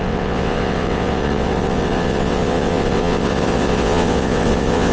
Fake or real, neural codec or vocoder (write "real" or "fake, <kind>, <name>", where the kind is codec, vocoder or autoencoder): fake, vocoder, WaveNeXt